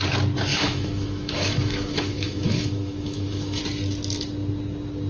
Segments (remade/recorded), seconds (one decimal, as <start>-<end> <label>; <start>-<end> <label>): 0.0-0.5 recorded; 0.5-3.6 remade; 3.6-5.1 recorded